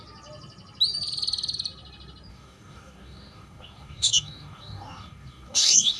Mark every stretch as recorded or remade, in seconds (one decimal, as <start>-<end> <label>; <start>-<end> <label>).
0.0-2.3 recorded; 2.3-6.0 remade